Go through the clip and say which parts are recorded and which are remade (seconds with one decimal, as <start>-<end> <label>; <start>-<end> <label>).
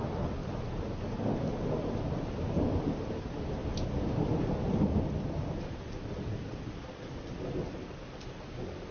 0.0-0.4 recorded; 0.4-1.0 remade; 1.0-8.9 recorded